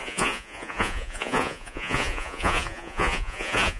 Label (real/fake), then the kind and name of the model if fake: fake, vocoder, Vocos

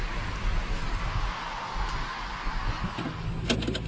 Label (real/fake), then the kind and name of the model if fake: real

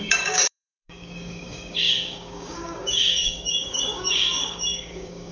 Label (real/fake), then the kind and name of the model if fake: fake, codec, DAC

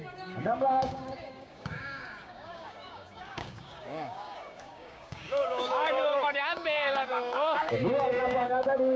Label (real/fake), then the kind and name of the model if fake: fake, codec, DAC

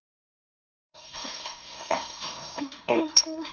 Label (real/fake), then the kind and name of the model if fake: fake, codec, SNAC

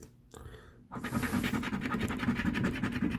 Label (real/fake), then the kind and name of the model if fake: real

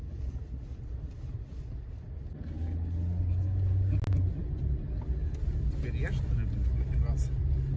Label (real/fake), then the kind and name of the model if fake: real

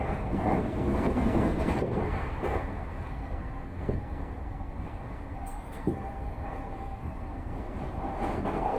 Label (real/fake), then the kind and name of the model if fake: fake, codec, SNAC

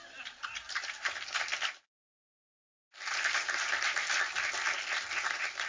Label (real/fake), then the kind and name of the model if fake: real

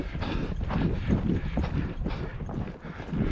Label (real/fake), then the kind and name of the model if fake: real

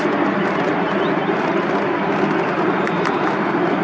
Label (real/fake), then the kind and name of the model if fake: real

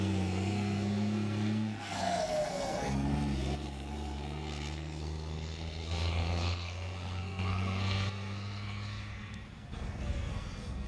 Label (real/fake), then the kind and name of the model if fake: fake, codec, SNAC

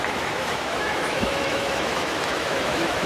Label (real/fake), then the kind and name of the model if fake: fake, autoencoder, DAC-VAE